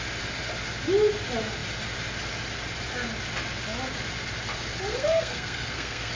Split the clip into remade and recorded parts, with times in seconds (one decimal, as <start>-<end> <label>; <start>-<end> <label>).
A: 0.0-4.9 recorded; 4.9-6.1 remade